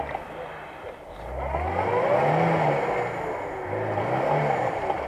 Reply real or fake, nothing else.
real